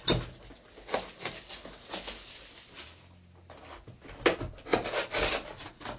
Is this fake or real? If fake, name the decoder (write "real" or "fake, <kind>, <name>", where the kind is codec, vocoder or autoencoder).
real